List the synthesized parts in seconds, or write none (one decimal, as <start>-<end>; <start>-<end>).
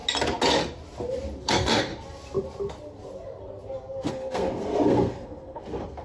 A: 1.4-1.9; 4.1-6.0